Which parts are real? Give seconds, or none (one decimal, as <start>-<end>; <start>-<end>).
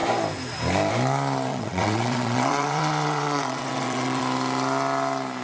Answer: 0.0-1.5; 4.2-5.4